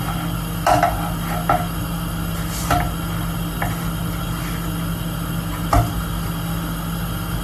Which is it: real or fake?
real